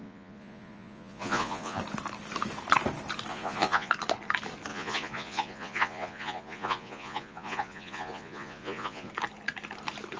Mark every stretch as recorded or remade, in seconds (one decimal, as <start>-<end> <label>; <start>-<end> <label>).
0.0-1.8 remade; 1.8-3.3 recorded; 3.3-3.9 remade; 3.9-4.7 recorded; 4.7-9.1 remade; 9.1-10.2 recorded